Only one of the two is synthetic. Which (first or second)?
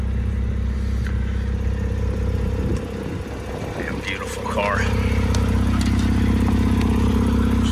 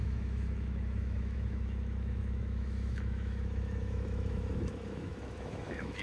second